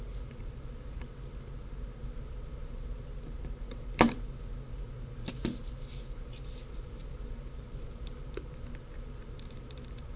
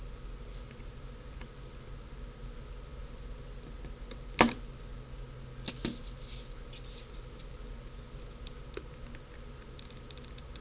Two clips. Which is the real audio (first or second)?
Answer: second